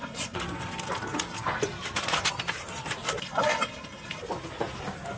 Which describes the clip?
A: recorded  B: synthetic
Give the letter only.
A